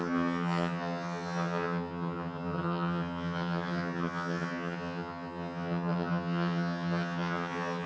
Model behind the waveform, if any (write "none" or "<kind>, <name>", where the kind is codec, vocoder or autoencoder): vocoder, HiFi-GAN